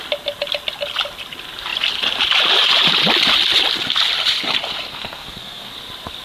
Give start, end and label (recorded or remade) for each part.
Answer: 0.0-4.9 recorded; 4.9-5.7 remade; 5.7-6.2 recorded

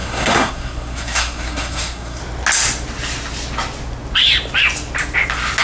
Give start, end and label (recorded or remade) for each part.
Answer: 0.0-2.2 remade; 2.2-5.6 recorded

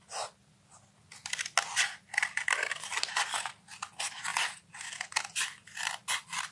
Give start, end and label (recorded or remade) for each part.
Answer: 0.0-6.5 recorded

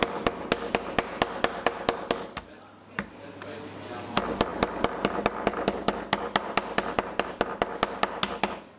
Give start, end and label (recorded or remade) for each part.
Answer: 0.0-8.8 recorded